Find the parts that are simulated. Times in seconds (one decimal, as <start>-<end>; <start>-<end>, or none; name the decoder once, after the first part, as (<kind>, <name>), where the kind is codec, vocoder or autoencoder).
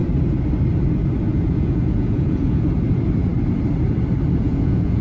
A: 1.3-2.6 (vocoder, Vocos); 4.4-5.0